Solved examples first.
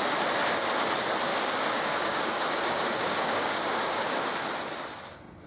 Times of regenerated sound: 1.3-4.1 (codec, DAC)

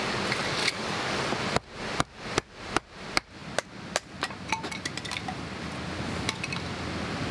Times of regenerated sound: 0.6-1.2 (codec, DAC)

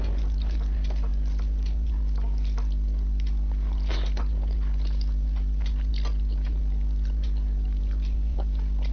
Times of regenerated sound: none

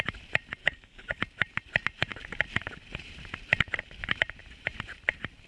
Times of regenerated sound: 0.6-1.2 (codec, DAC)

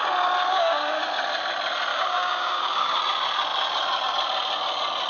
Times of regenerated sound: 0.5-1.0 (codec, DAC); 1.9-3.0

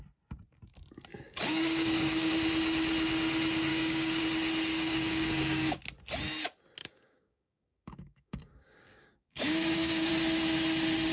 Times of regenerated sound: 1.1-2.3 (codec, DAC); 3.7-4.2; 4.7-5.8; 6.8-10.1

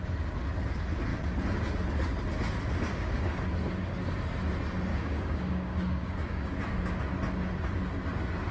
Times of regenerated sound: 2.9-3.4 (codec, DAC); 4.9-7.0

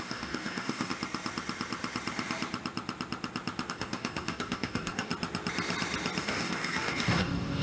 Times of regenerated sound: 0.0-0.9 (codec, DAC); 3.7-5.1; 6.2-7.6